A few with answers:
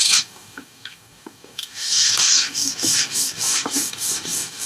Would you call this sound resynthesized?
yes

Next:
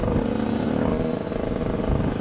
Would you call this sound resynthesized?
no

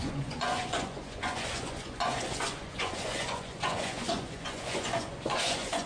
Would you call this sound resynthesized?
yes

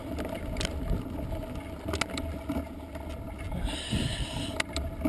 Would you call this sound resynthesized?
no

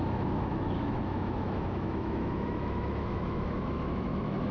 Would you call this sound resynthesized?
yes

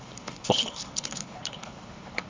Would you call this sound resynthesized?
yes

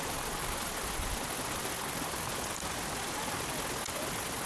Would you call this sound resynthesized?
no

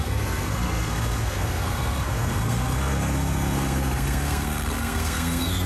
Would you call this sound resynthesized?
yes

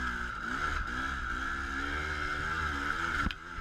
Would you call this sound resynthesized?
no